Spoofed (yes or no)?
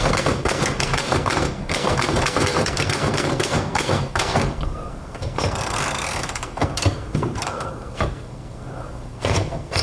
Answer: yes